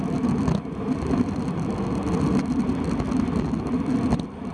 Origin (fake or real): real